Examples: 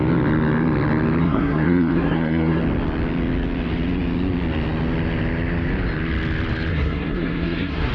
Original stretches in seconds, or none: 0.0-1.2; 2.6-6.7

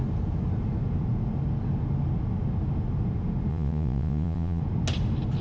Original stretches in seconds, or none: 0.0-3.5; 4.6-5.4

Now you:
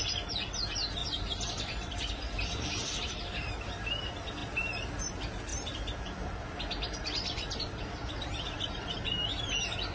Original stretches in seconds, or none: 0.0-1.0; 3.9-4.4; 5.0-5.5; 9.5-9.9